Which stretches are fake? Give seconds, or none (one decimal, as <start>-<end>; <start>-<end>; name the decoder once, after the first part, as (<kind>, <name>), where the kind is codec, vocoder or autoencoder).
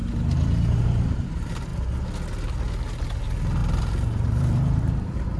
0.8-1.7 (vocoder, BigVGAN v2); 3.0-5.4